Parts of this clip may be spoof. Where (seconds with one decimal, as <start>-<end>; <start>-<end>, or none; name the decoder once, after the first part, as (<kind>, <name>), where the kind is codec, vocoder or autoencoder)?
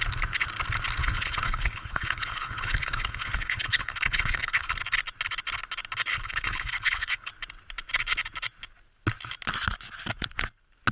1.0-4.7 (codec, HILCodec); 6.1-7.3